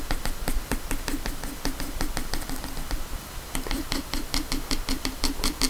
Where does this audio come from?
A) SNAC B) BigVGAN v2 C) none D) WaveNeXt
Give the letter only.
B